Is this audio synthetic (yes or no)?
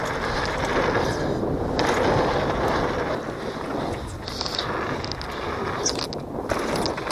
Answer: no